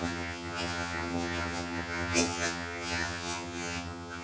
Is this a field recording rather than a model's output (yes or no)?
no